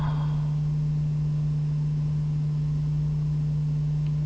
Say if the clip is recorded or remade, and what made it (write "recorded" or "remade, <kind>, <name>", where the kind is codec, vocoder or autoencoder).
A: recorded